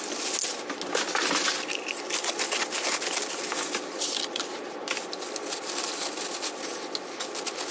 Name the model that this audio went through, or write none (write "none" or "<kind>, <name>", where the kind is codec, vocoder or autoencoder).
none